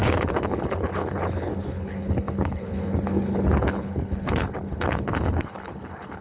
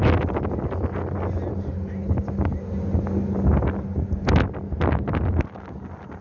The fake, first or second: first